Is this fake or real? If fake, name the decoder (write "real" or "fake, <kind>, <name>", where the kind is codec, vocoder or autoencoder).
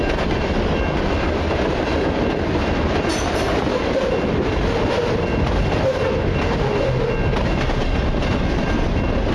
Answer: real